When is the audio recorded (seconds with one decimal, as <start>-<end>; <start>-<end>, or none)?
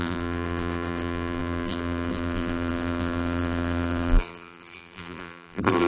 none